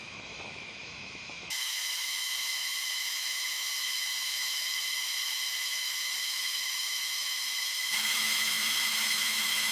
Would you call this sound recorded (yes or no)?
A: no